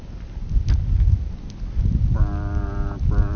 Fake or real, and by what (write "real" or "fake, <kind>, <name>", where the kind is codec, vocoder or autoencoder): real